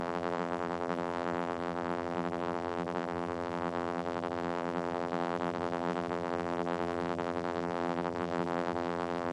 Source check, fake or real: fake